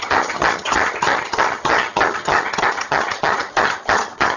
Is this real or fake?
fake